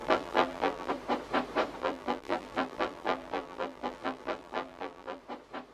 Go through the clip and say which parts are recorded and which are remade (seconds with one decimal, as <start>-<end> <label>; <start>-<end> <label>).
0.0-0.9 remade; 0.9-1.8 recorded; 1.8-5.2 remade; 5.2-5.7 recorded

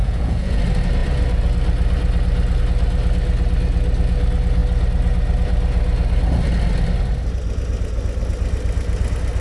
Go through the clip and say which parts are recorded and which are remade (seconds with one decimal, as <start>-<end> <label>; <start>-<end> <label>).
0.0-0.6 remade; 0.6-9.4 recorded

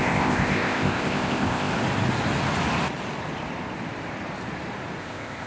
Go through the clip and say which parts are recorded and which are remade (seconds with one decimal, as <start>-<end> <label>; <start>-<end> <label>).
0.0-1.7 remade; 1.7-5.0 recorded; 5.0-5.5 remade

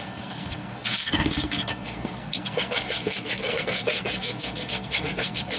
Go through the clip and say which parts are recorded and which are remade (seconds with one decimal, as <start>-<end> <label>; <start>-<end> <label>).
0.0-5.6 remade